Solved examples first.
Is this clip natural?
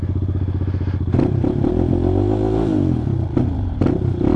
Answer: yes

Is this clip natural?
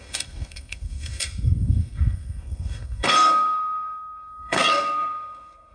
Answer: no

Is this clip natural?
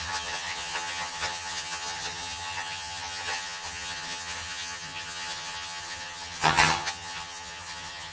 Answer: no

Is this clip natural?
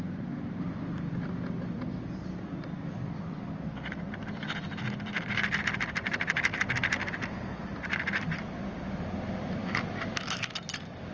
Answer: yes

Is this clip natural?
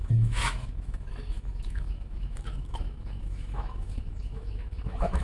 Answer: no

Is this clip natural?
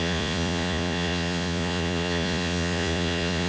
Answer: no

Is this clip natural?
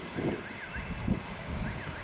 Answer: yes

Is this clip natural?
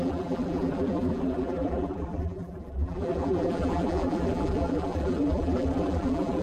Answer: no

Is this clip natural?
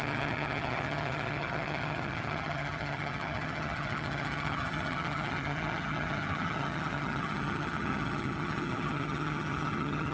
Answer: no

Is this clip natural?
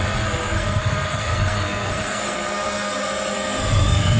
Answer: no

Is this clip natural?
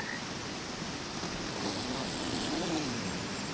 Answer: yes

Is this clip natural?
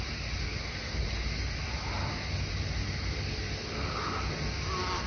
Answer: yes